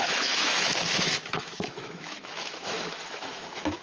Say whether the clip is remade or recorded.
remade